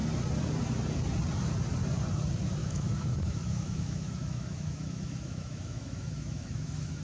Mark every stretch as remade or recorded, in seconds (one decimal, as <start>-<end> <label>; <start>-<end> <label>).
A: 0.0-2.6 recorded; 2.6-7.0 remade